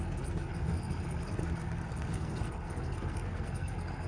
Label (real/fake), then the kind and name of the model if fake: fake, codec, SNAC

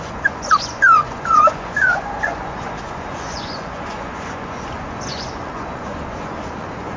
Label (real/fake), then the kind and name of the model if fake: fake, vocoder, Vocos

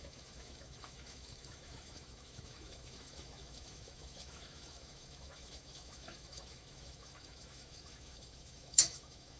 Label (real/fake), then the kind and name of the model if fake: fake, autoencoder, DAC-VAE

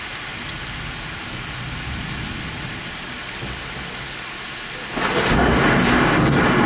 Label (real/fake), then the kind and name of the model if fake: real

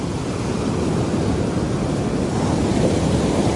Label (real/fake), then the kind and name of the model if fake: real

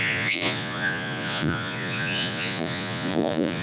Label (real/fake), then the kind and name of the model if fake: fake, vocoder, Vocos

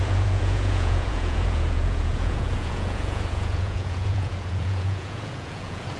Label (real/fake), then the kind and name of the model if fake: fake, vocoder, Vocos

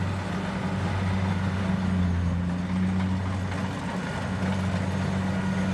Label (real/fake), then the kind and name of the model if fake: real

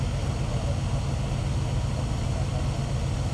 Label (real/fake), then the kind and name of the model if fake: real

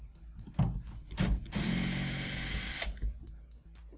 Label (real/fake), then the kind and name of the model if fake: real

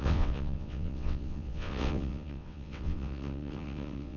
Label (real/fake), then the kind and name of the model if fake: fake, vocoder, WaveNeXt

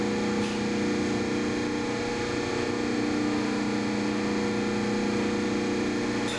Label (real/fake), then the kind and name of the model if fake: real